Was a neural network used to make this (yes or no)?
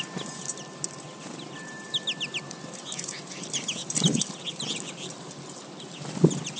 no